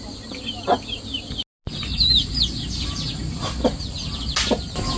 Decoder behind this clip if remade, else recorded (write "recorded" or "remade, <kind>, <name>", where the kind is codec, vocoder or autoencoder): recorded